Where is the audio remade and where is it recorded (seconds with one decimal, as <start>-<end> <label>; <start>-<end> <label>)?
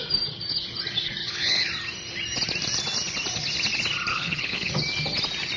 0.0-1.2 recorded; 1.2-1.7 remade; 1.7-4.1 recorded; 4.1-4.7 remade; 4.7-5.6 recorded